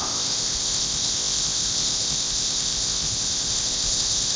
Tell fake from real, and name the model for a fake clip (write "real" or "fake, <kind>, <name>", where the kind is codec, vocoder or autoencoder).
fake, codec, ZipCodec